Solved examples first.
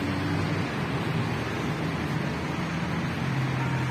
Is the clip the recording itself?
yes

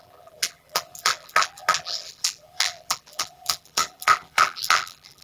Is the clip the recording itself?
no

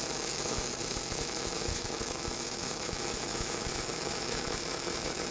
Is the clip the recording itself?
no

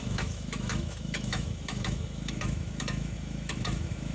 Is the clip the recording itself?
no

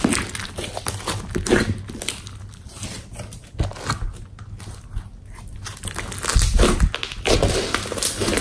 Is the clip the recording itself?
yes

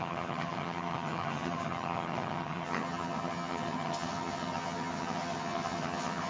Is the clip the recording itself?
no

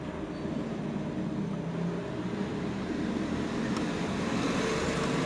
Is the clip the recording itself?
yes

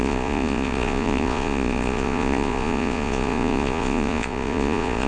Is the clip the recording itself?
no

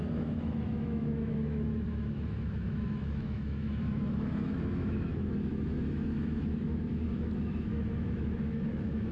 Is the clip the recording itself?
no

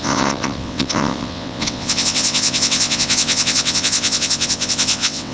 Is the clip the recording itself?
no